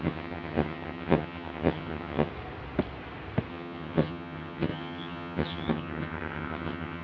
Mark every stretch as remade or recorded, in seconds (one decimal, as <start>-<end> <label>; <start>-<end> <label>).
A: 0.0-2.3 remade; 2.3-3.5 recorded; 3.5-7.0 remade